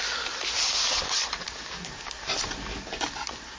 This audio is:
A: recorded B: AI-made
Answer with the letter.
A